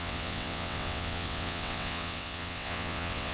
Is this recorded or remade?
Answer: remade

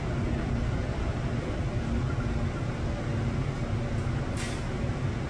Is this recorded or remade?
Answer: recorded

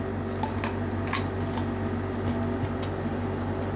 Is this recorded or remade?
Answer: recorded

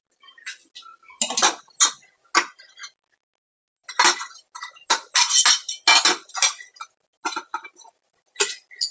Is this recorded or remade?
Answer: recorded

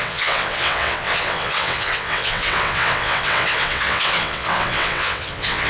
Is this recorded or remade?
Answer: remade